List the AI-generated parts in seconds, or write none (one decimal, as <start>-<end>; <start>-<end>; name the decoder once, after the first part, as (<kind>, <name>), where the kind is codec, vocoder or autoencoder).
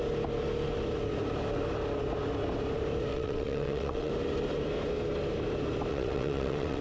3.1-4.1 (vocoder, WaveNeXt); 5.9-6.8